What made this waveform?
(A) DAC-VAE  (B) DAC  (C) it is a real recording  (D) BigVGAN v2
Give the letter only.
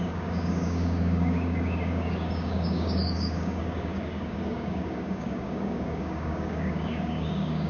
B